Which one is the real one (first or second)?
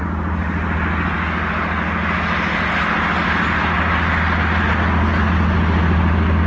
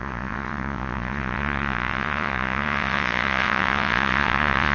first